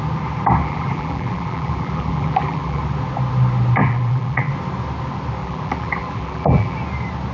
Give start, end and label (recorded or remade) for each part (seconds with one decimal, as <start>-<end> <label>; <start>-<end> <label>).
0.0-0.6 recorded; 0.6-2.8 remade; 2.8-3.8 recorded; 3.8-4.5 remade; 4.5-5.4 recorded; 5.4-6.8 remade; 6.8-7.3 recorded